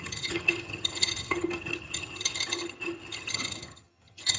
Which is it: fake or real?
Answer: fake